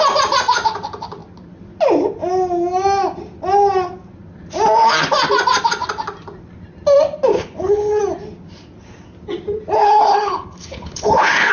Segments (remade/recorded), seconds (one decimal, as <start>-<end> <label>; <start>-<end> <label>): 0.0-7.3 recorded; 7.3-8.0 remade; 8.0-9.8 recorded; 9.8-11.5 remade